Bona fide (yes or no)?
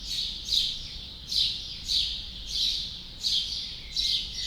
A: yes